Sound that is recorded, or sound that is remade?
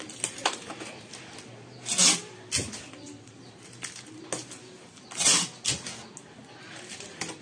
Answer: recorded